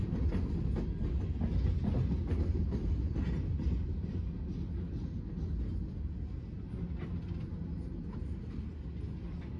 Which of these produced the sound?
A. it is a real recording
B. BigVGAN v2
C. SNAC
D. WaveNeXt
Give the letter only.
A